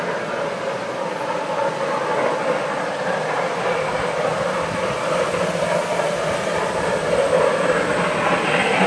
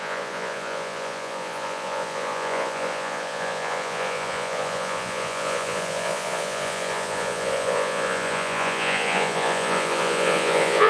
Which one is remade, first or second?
second